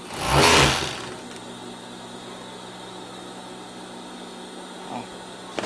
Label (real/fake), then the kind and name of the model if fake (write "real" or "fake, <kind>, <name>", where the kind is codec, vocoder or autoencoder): real